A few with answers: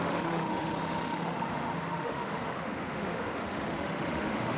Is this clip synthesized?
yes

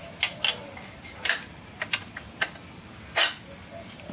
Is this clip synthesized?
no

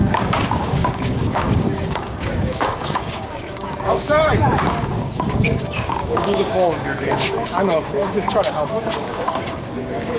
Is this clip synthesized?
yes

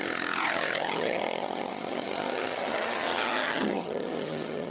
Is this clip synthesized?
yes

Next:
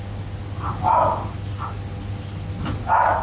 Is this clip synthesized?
no